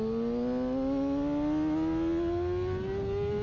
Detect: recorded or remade recorded